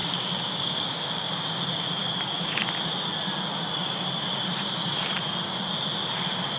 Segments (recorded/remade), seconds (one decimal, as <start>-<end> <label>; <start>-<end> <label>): 0.0-1.6 remade; 1.6-6.6 recorded